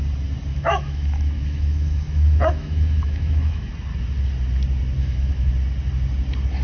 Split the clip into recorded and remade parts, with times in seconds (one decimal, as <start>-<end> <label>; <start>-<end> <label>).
0.0-0.5 recorded; 0.5-3.7 remade; 3.7-5.0 recorded; 5.0-5.5 remade; 5.5-6.6 recorded